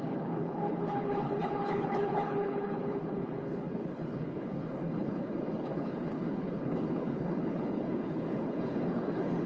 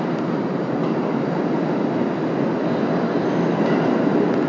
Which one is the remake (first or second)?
first